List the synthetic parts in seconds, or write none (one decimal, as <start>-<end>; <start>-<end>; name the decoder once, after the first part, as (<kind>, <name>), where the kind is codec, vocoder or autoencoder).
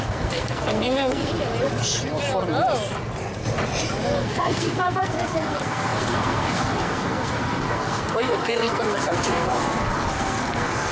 0.0-1.3 (codec, SNAC); 4.2-10.9